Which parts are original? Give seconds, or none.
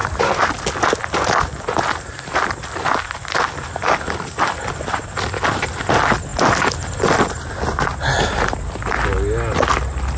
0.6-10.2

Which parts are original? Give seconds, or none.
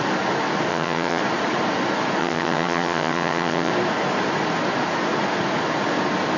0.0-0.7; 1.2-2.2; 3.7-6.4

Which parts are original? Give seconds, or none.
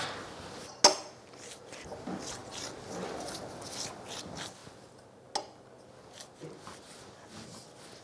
0.0-8.0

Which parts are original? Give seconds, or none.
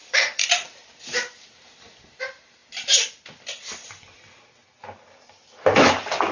0.5-6.3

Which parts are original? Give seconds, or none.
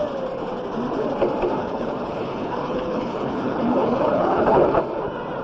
0.0-1.6; 4.8-5.4